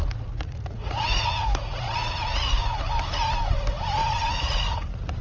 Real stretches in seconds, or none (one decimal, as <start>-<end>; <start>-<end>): 2.8-4.0